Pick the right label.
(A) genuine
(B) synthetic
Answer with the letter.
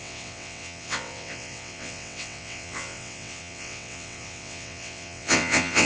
B